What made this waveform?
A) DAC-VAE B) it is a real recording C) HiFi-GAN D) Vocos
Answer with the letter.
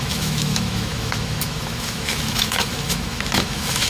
A